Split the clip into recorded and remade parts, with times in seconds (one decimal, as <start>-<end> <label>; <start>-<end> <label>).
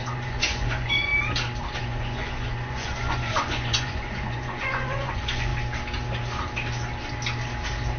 0.0-1.1 remade; 1.1-1.8 recorded; 1.8-5.5 remade; 5.5-8.0 recorded